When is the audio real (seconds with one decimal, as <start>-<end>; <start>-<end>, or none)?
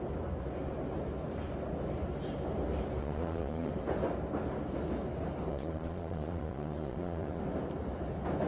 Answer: 0.0-3.0; 3.7-5.5; 7.4-8.5